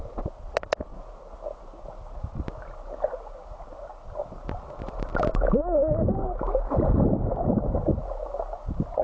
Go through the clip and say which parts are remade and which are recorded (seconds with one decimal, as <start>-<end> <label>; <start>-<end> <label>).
0.0-9.0 recorded